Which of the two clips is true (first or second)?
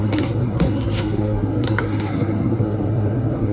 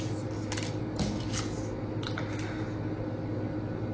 second